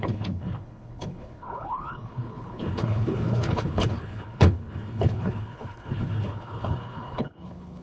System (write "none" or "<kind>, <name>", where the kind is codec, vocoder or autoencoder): codec, HILCodec